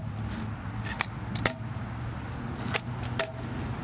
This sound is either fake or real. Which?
real